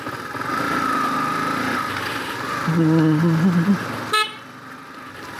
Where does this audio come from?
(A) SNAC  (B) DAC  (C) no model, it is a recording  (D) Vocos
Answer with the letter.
C